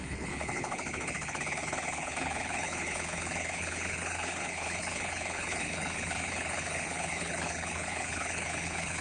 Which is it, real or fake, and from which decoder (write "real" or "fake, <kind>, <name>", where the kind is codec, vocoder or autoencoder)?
fake, codec, HILCodec